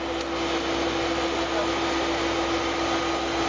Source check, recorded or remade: recorded